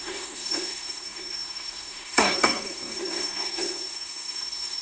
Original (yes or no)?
no